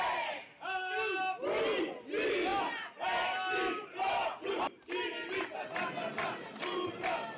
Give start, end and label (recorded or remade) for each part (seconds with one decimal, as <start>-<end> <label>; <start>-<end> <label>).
0.0-7.4 recorded